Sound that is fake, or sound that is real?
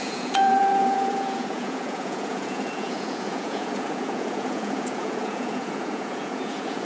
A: fake